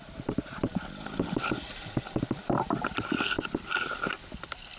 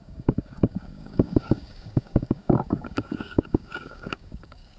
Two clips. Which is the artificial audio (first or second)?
second